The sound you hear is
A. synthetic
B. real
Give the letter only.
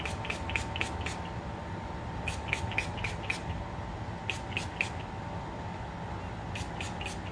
B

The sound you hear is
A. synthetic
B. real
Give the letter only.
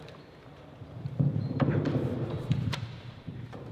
A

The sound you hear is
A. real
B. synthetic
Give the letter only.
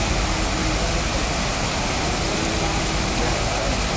A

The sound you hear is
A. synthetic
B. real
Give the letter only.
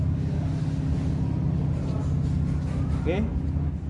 B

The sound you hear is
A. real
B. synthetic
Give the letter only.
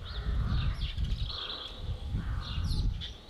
B